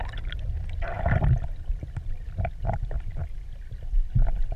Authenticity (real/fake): real